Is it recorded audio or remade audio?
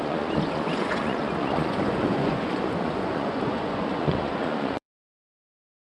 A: remade